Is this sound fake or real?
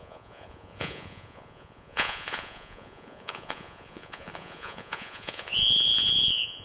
fake